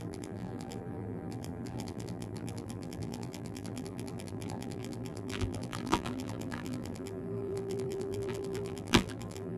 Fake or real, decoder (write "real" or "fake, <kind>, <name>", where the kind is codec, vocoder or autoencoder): fake, vocoder, BigVGAN v2